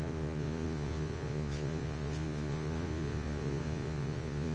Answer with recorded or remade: remade